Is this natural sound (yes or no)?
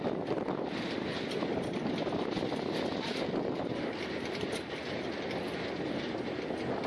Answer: yes